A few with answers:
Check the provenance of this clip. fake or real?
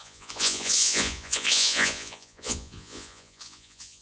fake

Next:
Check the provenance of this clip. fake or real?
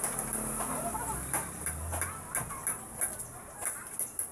real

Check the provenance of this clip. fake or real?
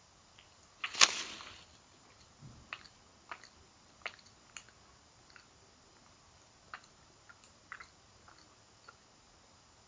real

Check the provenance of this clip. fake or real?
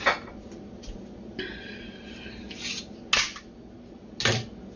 real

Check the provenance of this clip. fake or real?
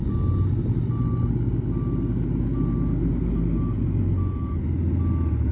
real